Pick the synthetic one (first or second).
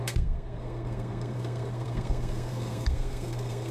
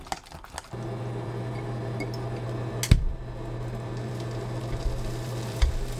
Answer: first